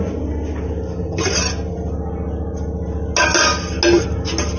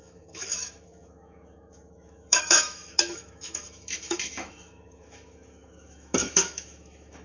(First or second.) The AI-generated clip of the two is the second